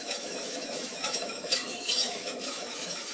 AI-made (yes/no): yes